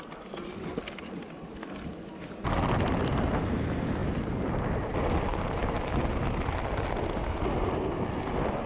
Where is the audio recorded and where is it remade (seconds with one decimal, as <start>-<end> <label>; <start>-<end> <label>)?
0.0-4.0 recorded; 4.0-4.6 remade; 4.6-5.6 recorded; 5.6-6.2 remade; 6.2-8.7 recorded